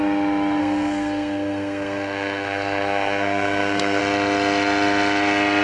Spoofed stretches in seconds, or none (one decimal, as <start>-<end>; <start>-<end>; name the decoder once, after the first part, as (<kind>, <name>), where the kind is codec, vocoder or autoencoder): 0.6-4.0 (codec, SNAC)